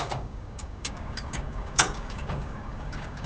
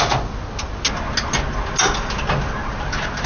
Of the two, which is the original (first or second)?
second